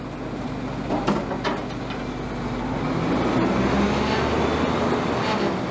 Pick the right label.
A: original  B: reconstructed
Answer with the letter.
A